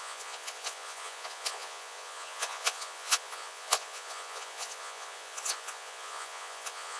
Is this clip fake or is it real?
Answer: fake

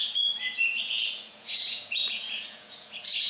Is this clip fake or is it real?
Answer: fake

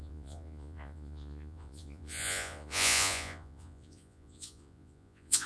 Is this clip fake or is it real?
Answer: fake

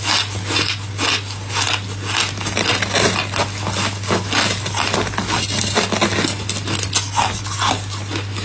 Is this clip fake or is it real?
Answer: real